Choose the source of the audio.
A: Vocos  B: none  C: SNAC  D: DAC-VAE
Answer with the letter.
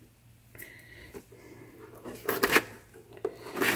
B